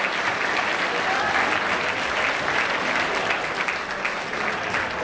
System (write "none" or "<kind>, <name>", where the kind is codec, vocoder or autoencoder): none